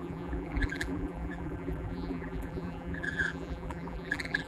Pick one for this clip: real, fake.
fake